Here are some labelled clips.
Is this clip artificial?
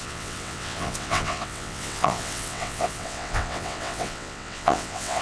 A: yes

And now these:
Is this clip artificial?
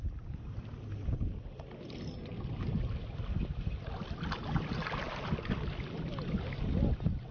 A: no